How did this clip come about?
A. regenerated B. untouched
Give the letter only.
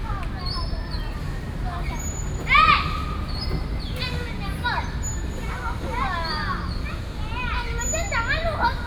B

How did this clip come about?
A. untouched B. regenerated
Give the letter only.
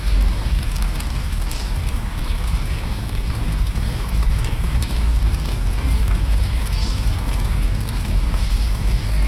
B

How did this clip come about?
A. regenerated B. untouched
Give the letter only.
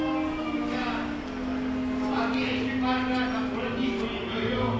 B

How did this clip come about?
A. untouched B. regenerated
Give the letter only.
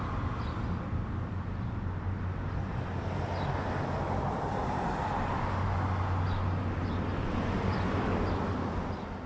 A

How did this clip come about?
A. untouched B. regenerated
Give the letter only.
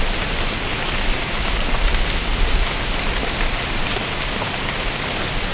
A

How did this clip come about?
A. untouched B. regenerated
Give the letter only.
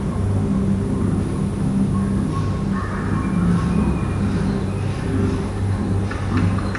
A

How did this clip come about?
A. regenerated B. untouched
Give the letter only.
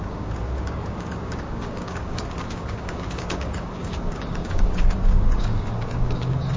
A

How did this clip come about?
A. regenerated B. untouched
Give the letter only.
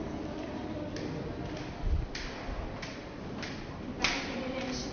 B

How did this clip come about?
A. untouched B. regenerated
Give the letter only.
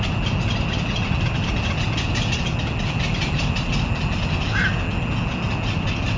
A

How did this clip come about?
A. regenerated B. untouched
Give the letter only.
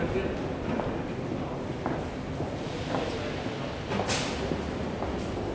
B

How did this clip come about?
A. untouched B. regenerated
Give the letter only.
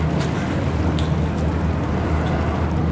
A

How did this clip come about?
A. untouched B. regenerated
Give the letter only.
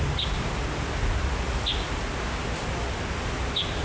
A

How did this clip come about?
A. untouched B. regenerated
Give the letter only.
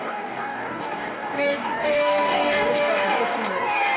B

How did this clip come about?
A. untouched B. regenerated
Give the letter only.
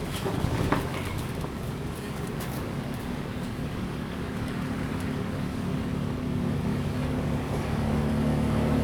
B